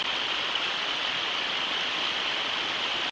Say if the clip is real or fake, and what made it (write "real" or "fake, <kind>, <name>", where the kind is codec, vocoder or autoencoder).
real